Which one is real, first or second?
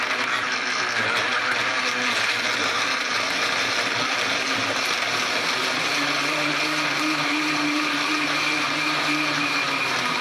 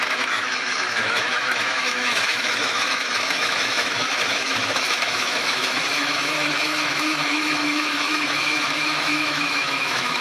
first